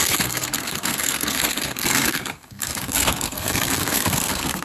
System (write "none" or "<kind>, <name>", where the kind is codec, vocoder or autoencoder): codec, SNAC